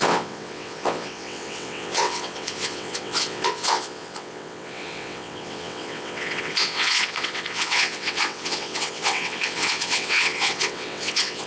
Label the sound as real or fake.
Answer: fake